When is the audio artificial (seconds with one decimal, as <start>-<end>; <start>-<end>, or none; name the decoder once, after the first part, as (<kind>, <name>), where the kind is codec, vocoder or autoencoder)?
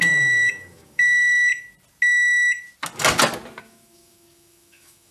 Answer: 0.0-1.5 (autoencoder, DAC-VAE); 3.6-5.1